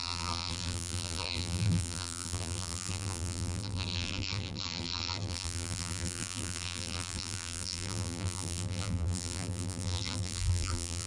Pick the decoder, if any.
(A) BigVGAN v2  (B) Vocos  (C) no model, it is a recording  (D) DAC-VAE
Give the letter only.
A